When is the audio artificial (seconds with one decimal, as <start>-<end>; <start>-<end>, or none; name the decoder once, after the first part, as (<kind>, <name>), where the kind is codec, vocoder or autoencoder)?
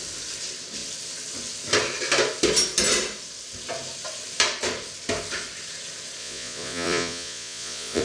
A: 6.2-8.0 (vocoder, Vocos)